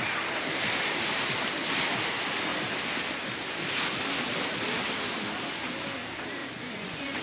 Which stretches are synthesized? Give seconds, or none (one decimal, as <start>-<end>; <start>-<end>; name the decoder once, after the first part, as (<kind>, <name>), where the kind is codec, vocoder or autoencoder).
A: 6.4-7.2 (vocoder, Vocos)